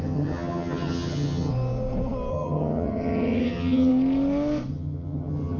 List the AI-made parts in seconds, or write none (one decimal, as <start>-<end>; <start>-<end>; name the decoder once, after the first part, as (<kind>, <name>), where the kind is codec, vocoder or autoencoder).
0.0-1.5 (vocoder, HiFi-GAN); 2.3-3.9; 4.7-5.6